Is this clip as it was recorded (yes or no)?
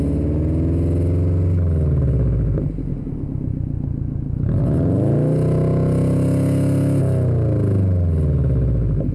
yes